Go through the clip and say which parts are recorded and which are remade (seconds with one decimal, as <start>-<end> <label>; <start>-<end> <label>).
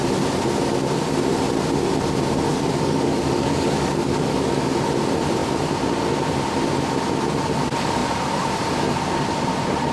0.0-2.5 recorded; 2.5-4.7 remade; 4.7-9.9 recorded